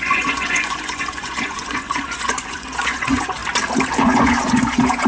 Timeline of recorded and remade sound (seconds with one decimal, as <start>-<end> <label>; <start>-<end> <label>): 0.0-3.4 remade; 3.4-4.0 recorded; 4.0-5.1 remade